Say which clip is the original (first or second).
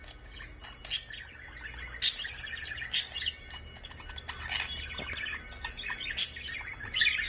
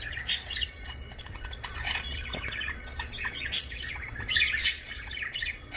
first